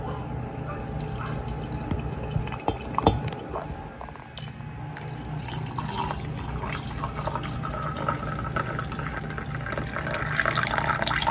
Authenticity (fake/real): real